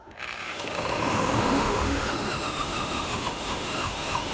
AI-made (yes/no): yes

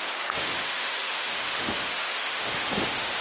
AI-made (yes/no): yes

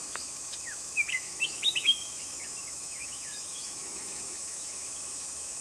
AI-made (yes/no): yes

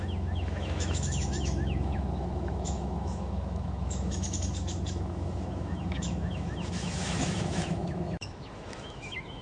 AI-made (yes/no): yes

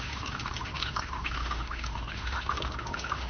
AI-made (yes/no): yes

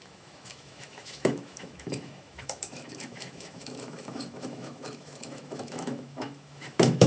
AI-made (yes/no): yes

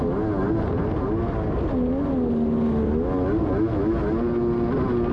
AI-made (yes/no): no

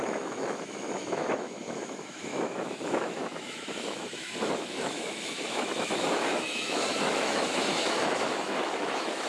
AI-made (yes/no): yes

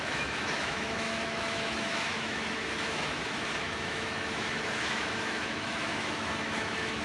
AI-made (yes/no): yes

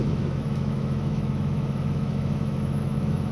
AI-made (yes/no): yes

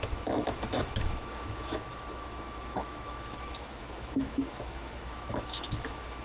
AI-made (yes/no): yes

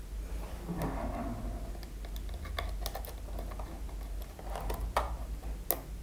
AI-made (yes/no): no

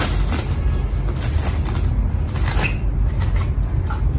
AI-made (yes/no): no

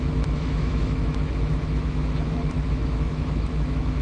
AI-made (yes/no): yes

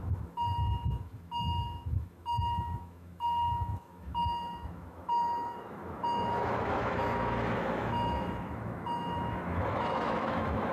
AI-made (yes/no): yes